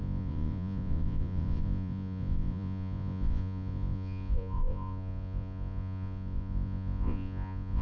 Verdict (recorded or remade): remade